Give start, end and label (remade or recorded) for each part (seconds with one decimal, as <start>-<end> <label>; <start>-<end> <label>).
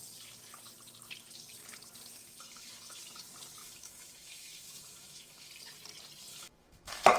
0.0-2.2 recorded; 2.2-3.0 remade; 3.0-3.6 recorded; 3.6-5.5 remade; 5.5-6.3 recorded; 6.3-7.2 remade